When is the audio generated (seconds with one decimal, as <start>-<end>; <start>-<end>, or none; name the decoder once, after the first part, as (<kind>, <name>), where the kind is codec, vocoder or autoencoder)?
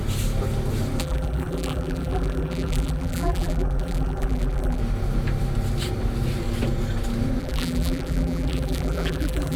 1.0-4.8 (vocoder, BigVGAN v2); 7.4-9.6